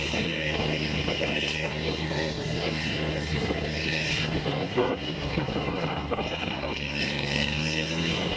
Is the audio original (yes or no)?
no